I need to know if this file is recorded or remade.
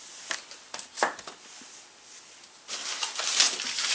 recorded